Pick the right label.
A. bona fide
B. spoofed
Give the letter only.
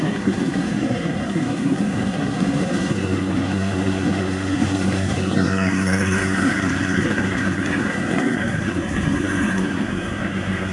B